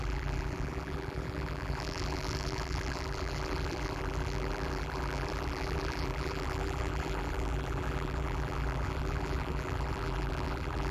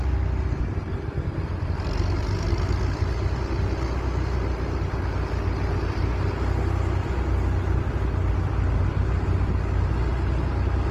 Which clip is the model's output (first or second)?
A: first